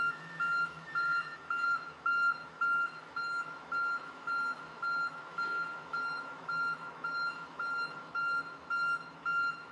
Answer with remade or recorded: remade